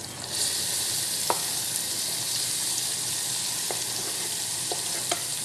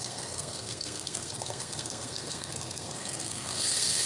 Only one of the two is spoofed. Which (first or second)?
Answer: second